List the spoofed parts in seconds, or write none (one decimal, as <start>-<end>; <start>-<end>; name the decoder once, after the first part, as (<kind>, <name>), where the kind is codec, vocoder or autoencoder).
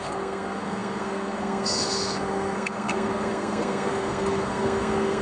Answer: 0.0-5.2 (codec, SNAC)